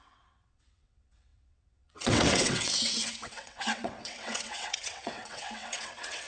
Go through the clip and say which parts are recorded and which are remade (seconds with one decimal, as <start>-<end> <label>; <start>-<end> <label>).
0.0-6.3 remade